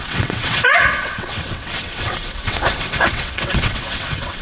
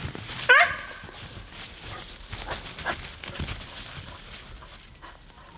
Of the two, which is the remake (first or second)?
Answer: first